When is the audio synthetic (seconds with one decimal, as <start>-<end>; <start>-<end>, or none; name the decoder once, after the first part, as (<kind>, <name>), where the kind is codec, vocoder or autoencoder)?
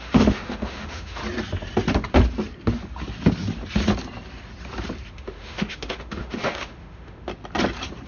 0.0-1.2 (autoencoder, DAC-VAE); 5.1-7.3